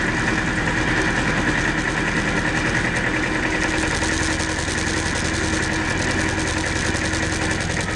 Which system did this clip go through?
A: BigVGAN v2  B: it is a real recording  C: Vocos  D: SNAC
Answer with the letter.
B